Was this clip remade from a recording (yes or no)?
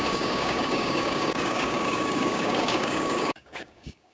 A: yes